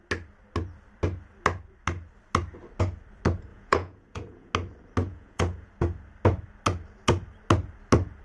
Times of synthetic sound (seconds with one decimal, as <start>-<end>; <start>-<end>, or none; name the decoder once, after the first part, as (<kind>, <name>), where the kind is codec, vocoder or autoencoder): 3.5-4.5 (vocoder, Vocos); 5.0-5.7